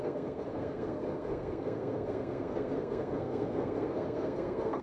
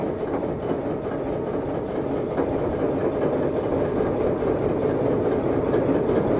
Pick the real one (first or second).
second